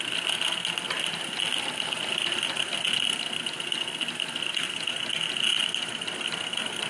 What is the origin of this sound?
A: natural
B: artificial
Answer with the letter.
A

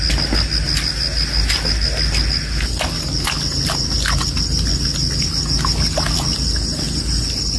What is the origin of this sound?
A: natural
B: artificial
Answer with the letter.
A